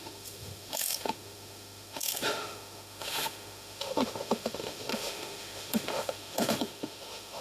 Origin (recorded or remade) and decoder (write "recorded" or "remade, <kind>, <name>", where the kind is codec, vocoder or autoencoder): remade, autoencoder, DAC-VAE